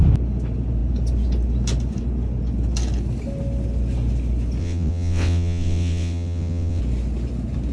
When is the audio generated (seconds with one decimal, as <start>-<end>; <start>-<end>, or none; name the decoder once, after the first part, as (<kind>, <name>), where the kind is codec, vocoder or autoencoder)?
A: 4.6-6.8 (vocoder, WaveNeXt)